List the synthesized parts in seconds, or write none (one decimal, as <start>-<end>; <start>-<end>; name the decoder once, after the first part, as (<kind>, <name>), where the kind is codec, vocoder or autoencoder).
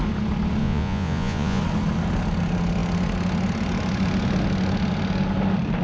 0.6-1.6 (vocoder, Vocos)